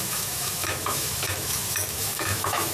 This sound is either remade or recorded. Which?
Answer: remade